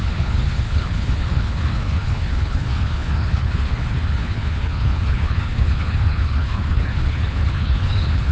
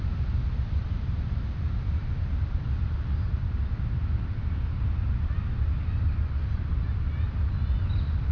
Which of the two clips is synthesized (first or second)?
first